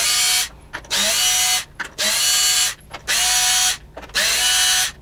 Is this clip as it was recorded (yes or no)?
yes